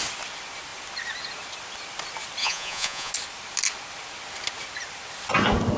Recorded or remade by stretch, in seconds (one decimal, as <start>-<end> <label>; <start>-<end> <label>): 0.0-2.4 recorded; 2.4-3.1 remade; 3.1-5.8 recorded